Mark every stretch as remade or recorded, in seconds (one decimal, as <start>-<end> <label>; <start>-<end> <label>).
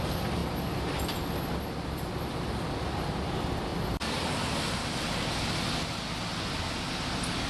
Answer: 0.0-7.5 recorded